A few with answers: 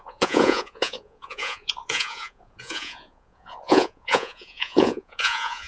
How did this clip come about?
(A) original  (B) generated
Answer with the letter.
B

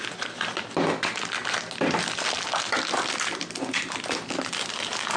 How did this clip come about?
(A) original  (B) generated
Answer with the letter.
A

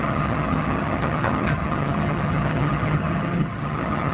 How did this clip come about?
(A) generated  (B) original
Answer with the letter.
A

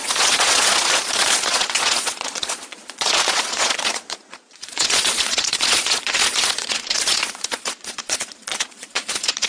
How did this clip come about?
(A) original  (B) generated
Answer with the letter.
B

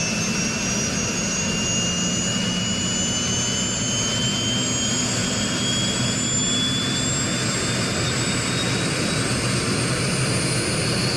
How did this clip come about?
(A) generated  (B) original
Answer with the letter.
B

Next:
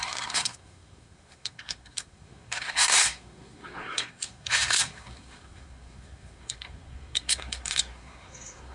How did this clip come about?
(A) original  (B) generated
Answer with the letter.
B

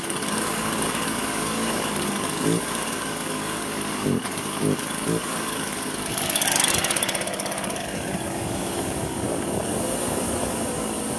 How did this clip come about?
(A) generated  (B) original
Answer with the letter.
A